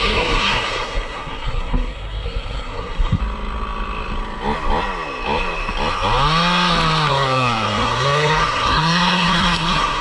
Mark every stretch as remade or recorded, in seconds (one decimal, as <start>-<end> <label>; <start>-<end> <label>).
0.0-3.2 remade; 3.2-7.1 recorded; 7.1-10.0 remade